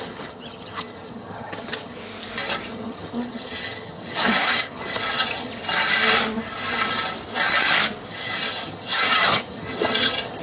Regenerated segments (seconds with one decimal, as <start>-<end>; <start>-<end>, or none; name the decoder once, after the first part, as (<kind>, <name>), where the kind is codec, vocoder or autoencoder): 0.0-2.0 (vocoder, HiFi-GAN); 2.7-5.5; 8.1-10.4